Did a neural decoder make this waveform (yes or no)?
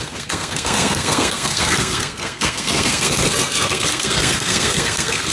yes